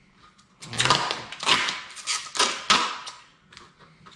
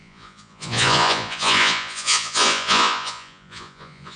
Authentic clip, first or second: first